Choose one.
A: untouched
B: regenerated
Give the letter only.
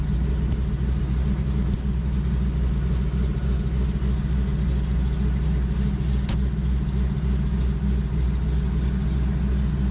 A